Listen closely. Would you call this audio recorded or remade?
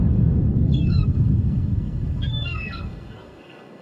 remade